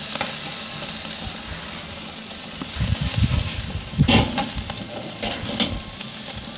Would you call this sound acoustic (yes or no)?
yes